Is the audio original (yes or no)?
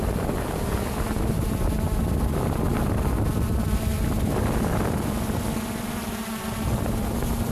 yes